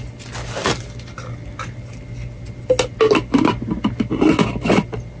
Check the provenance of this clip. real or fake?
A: real